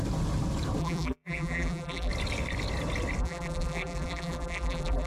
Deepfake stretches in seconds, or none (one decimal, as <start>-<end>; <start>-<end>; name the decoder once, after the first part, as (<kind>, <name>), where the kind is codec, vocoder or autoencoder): 0.8-2.1 (vocoder, BigVGAN v2); 3.2-5.1